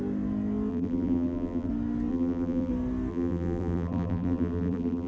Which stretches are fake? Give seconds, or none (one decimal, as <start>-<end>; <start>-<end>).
0.7-1.7; 2.1-2.7; 3.1-5.1